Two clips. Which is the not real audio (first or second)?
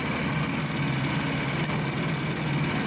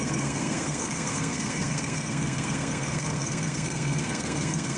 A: second